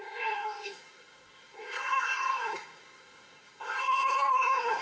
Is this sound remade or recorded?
remade